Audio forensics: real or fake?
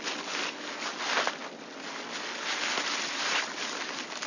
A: real